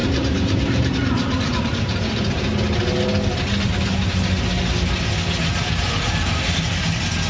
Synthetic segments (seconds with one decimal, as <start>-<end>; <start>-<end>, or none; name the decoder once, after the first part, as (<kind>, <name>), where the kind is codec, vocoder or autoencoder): 0.0-2.5 (vocoder, BigVGAN v2)